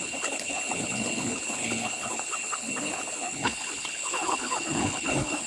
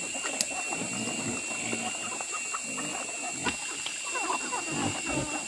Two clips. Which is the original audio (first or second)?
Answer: second